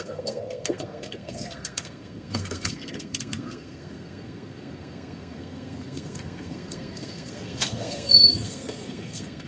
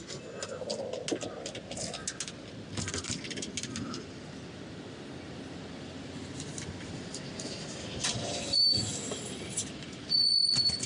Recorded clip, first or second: second